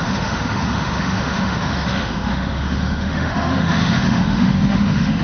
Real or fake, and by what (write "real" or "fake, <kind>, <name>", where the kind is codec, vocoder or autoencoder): fake, autoencoder, DAC-VAE